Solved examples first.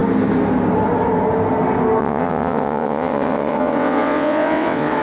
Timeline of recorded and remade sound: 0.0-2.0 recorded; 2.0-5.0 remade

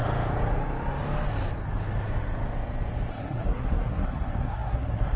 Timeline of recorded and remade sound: 0.0-3.1 recorded; 3.1-5.2 remade

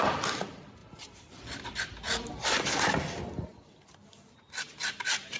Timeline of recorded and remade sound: 0.0-0.8 recorded; 0.8-2.3 remade; 2.3-5.4 recorded